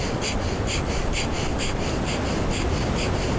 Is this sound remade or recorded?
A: recorded